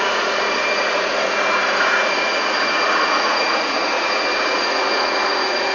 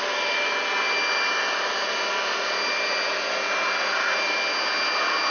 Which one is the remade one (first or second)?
first